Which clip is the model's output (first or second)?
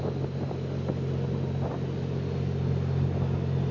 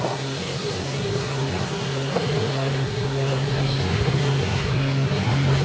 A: second